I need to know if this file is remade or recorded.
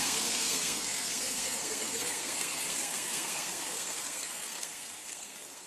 remade